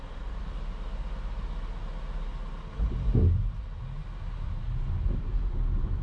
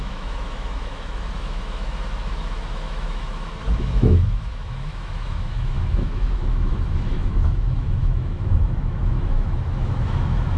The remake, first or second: second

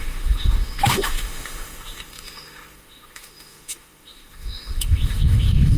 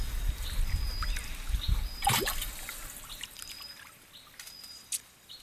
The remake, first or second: first